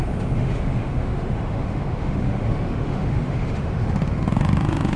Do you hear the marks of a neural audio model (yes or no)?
yes